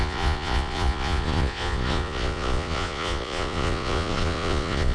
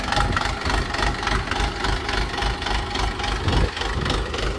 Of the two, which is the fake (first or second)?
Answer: first